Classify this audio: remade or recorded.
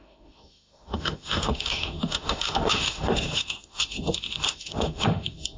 remade